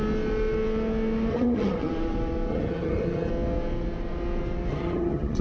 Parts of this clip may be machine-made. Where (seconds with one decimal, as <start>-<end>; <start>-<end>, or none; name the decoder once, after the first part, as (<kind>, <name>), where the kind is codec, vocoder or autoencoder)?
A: 1.3-1.9 (vocoder, HiFi-GAN); 2.5-3.3; 4.7-5.4